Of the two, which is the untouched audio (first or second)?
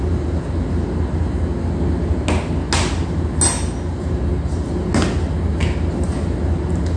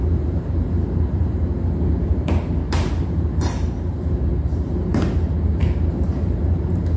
first